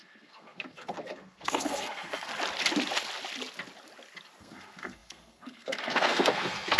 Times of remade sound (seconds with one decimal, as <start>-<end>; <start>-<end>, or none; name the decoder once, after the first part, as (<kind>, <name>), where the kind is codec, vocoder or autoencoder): 0.0-2.3 (codec, SNAC); 4.4-6.8